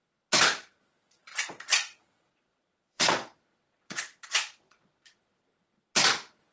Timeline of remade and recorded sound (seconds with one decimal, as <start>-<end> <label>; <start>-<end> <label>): 0.0-1.3 recorded; 1.3-5.2 remade; 5.2-6.5 recorded